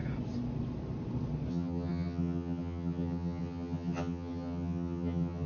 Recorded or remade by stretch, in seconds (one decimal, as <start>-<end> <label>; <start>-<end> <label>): 0.0-1.5 recorded; 1.5-5.5 remade